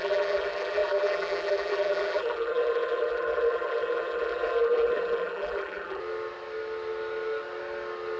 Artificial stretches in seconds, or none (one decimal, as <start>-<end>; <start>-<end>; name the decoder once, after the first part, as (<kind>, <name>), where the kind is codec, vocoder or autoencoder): 0.0-6.0 (vocoder, BigVGAN v2)